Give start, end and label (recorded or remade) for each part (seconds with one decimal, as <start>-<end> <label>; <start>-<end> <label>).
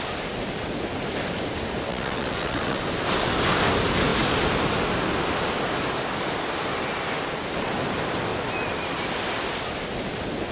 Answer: 0.0-1.9 recorded; 1.9-2.8 remade; 2.8-10.5 recorded